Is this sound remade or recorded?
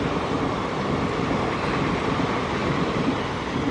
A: recorded